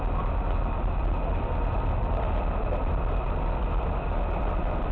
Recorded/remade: recorded